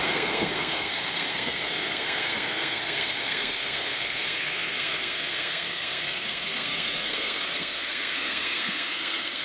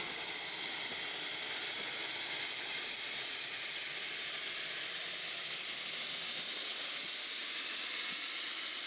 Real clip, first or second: second